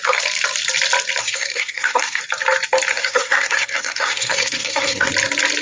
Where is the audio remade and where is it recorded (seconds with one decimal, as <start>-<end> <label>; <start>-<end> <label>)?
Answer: 0.0-1.2 recorded; 1.2-2.2 remade; 2.2-2.9 recorded; 2.9-5.1 remade; 5.1-5.6 recorded